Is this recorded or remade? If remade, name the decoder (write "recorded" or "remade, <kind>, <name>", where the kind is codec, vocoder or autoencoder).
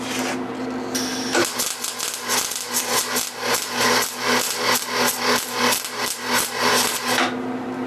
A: recorded